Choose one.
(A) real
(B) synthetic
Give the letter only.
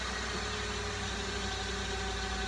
A